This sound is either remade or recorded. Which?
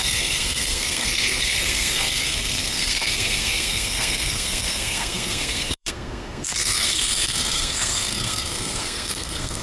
remade